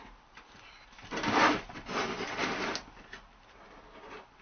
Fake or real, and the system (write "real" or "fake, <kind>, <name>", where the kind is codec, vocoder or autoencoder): real